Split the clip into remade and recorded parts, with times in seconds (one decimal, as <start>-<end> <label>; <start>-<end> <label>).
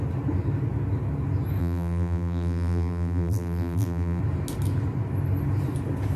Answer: 0.0-1.6 recorded; 1.6-4.2 remade; 4.2-6.2 recorded